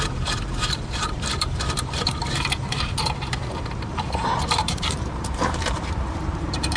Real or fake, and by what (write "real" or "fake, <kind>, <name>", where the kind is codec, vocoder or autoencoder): fake, vocoder, BigVGAN v2